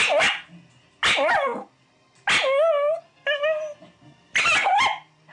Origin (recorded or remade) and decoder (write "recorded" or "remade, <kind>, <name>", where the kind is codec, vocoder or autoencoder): recorded